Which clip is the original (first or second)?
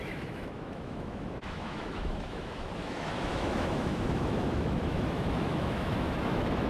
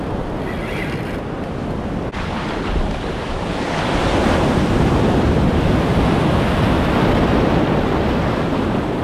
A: second